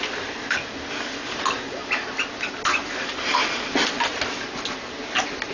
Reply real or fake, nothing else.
real